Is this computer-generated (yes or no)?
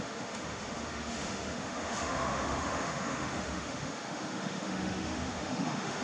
yes